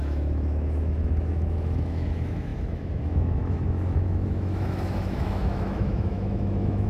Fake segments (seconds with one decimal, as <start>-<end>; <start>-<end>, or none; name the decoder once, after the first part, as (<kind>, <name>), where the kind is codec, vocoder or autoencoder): 0.0-6.9 (autoencoder, DAC-VAE)